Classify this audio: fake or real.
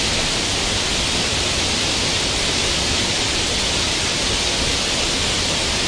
real